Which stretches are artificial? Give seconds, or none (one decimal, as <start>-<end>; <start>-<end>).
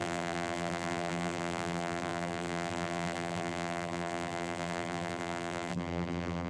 0.0-6.5